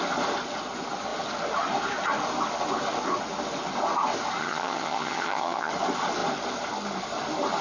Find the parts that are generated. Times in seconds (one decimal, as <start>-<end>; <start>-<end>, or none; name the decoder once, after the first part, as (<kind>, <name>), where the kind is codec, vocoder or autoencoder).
4.4-5.7 (vocoder, HiFi-GAN)